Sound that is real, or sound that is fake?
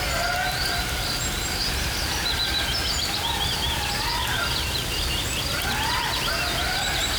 real